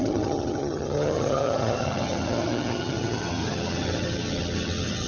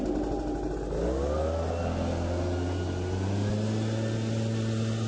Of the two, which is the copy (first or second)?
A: first